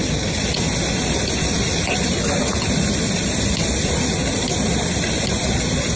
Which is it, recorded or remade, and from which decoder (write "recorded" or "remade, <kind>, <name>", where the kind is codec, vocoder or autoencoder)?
recorded